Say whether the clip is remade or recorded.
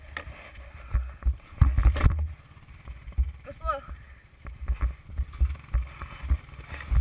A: recorded